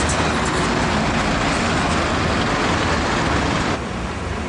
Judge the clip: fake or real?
real